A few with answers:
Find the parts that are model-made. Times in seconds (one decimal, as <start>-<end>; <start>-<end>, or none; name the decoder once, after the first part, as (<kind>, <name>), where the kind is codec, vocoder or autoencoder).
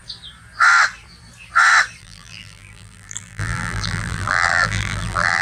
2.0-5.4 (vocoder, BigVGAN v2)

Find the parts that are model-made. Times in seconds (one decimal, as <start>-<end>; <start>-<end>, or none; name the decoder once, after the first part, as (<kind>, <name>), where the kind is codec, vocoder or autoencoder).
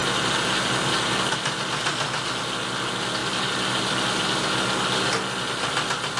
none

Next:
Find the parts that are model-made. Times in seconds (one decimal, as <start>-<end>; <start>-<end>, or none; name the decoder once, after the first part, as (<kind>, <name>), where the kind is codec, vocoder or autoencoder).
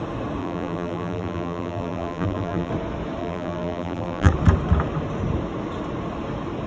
0.4-2.7 (vocoder, BigVGAN v2); 3.2-4.3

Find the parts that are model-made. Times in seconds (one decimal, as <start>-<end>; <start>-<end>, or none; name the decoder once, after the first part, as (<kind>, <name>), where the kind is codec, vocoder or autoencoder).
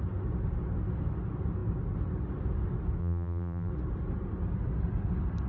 3.0-3.7 (vocoder, BigVGAN v2)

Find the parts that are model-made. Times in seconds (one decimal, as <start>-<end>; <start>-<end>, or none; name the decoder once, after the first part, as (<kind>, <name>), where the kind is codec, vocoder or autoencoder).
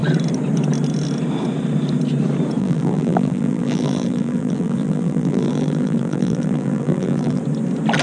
2.6-7.4 (vocoder, BigVGAN v2)